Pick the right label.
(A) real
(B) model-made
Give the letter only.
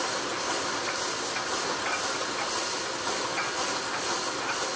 A